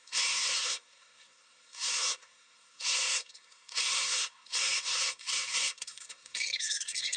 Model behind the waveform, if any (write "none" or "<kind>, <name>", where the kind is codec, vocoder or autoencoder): codec, SNAC